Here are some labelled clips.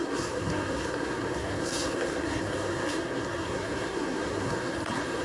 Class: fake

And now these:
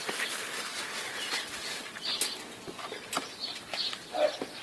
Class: real